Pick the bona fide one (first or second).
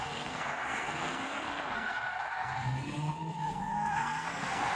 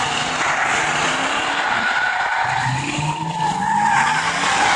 second